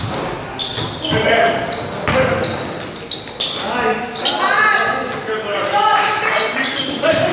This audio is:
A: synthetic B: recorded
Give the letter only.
B